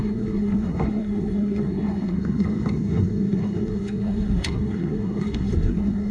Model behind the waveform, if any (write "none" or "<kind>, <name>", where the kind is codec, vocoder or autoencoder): codec, SNAC